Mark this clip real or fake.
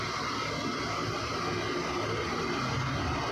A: real